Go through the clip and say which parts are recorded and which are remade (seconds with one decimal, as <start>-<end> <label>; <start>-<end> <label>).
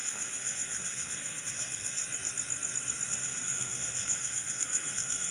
0.0-2.0 remade; 2.0-3.1 recorded; 3.1-5.3 remade